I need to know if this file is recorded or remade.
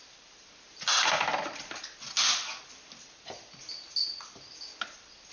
recorded